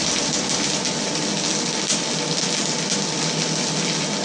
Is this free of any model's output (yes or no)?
yes